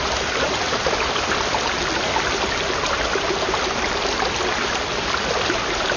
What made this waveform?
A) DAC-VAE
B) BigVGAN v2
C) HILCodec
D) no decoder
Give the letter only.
D